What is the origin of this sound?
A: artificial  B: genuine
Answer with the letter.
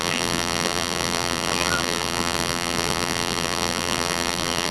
A